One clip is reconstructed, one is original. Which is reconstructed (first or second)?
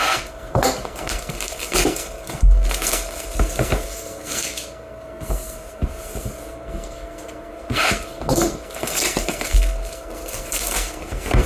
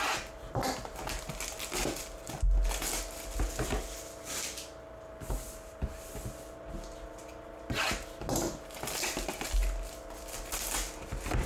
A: first